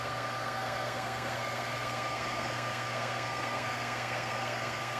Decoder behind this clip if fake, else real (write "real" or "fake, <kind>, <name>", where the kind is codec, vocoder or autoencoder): fake, codec, SNAC